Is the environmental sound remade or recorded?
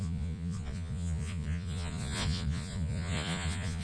remade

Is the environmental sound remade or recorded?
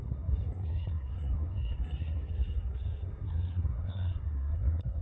remade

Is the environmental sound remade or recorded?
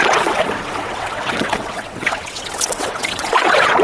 remade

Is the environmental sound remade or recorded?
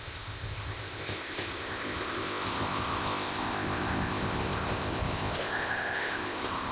remade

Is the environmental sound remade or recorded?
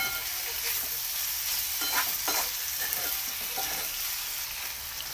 recorded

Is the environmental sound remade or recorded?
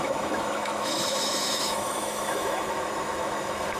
remade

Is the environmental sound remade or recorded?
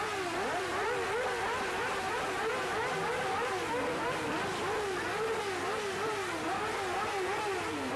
recorded